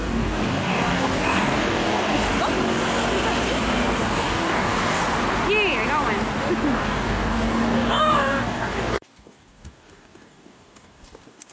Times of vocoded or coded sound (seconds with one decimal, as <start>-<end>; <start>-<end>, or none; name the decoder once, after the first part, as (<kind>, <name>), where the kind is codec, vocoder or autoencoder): 0.0-2.3 (codec, DAC); 4.0-5.0; 6.6-11.5